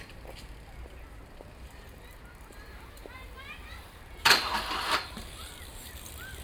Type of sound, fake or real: fake